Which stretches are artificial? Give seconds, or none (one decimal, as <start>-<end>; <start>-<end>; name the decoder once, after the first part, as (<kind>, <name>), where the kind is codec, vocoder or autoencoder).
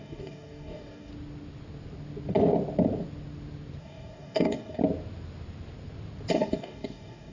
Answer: 0.0-1.1 (codec, DAC); 3.8-4.8; 6.3-7.3